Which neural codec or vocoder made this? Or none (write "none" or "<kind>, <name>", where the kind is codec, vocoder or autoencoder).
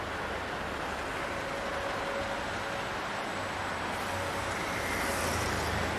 none